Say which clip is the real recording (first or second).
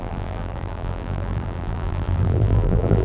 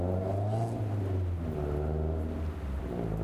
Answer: second